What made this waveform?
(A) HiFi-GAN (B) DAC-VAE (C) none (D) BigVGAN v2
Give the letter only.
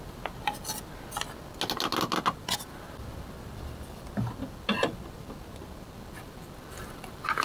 C